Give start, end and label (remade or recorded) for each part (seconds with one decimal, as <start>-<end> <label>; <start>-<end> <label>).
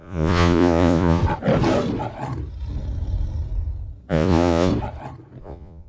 0.0-1.2 remade; 1.2-4.1 recorded; 4.1-4.7 remade; 4.7-5.4 recorded; 5.4-5.9 remade